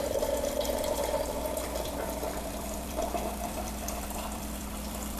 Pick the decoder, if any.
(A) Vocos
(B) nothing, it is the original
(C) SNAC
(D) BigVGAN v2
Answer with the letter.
D